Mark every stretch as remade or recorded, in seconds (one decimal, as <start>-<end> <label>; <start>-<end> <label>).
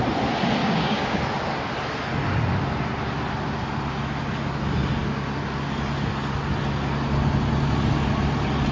0.0-0.6 recorded; 0.6-1.2 remade; 1.2-8.7 recorded